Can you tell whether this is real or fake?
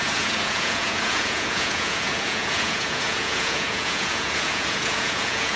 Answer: fake